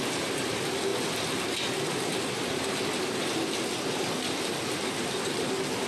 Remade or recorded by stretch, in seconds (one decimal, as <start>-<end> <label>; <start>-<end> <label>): 0.0-5.9 recorded